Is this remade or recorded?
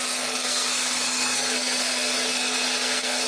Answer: remade